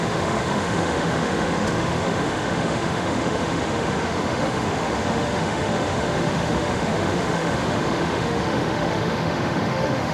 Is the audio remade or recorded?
remade